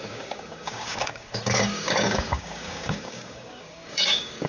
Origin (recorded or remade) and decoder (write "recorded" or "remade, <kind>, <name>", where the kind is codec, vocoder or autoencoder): remade, codec, DAC